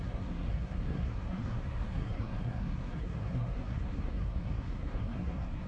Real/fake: fake